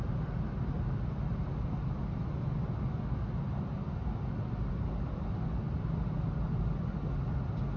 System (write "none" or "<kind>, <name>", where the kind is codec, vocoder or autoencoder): none